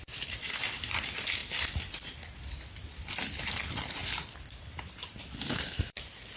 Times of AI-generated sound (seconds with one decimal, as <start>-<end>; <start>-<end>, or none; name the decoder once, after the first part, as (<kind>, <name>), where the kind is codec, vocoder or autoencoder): 1.4-3.4 (vocoder, BigVGAN v2); 4.0-5.2

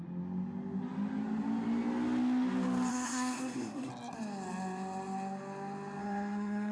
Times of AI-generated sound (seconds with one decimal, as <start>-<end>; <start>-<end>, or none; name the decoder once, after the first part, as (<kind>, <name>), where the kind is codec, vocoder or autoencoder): 2.9-3.9 (codec, SNAC); 6.0-6.7

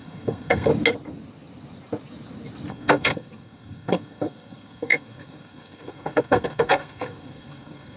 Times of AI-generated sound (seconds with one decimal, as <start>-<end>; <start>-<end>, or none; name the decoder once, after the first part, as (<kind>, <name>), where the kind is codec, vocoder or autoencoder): 0.0-0.7 (codec, SNAC); 2.7-8.0